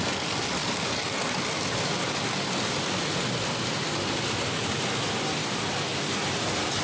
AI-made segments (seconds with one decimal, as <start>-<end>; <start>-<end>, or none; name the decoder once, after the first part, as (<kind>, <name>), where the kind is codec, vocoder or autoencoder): 5.9-6.8 (vocoder, BigVGAN v2)